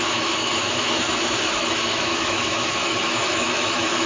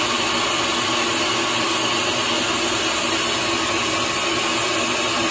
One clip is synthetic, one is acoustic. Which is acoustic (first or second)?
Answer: second